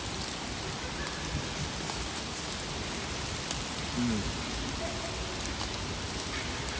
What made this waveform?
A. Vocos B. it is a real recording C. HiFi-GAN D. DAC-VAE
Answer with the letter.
B